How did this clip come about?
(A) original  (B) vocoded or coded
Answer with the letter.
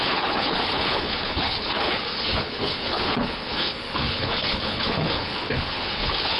B